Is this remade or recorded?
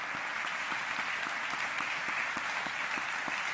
recorded